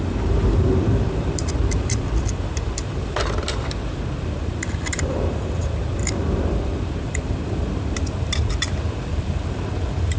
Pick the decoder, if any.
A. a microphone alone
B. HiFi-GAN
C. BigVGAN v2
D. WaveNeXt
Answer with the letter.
C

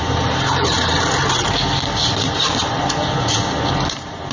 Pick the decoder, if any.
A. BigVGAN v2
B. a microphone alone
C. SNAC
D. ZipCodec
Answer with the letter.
A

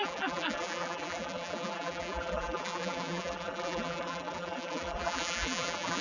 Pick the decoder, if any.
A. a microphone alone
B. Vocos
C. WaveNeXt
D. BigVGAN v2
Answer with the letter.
D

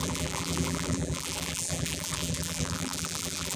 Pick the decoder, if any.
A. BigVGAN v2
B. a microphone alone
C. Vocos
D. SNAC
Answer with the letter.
A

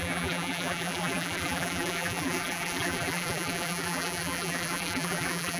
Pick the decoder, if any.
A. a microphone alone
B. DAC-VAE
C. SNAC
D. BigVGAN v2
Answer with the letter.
D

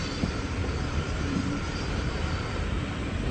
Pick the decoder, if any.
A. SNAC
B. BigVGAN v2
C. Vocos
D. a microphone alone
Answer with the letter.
B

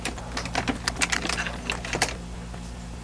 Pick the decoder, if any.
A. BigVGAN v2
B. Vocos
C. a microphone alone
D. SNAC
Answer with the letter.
C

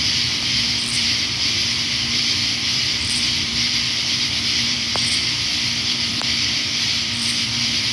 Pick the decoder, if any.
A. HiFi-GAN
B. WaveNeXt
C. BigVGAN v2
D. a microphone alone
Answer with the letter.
C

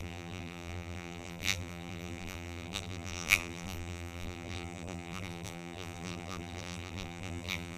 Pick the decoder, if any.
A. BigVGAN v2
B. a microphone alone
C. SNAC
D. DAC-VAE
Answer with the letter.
A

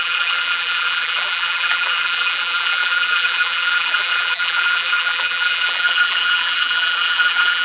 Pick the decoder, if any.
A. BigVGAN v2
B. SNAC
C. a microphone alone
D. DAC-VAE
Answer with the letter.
A